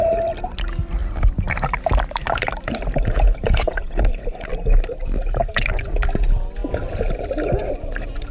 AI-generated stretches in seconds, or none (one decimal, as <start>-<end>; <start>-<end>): 1.0-4.5; 5.4-5.9